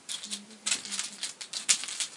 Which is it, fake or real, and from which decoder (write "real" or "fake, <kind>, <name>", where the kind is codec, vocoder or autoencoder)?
real